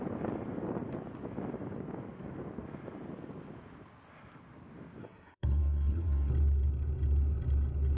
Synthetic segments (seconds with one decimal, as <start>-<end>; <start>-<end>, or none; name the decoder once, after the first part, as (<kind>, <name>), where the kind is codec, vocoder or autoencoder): 5.0-6.3 (codec, SNAC)